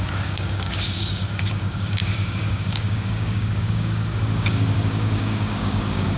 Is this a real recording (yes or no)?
no